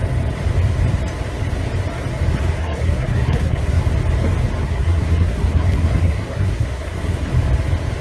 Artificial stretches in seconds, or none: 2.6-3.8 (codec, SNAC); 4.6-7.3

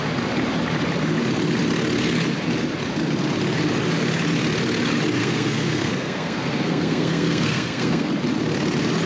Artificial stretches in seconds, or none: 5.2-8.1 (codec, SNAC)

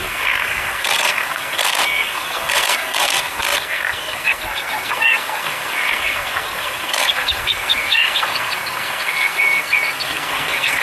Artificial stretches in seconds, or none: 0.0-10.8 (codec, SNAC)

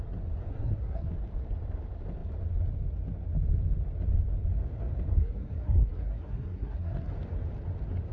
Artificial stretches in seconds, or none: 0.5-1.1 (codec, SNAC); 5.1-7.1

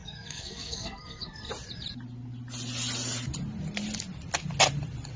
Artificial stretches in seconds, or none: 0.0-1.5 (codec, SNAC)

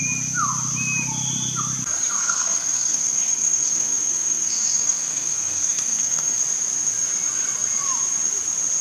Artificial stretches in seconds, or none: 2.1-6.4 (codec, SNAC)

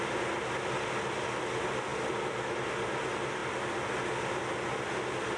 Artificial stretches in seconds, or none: none